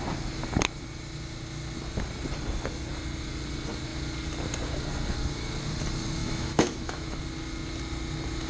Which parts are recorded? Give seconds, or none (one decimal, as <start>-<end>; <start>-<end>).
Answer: 0.0-6.2; 7.2-8.5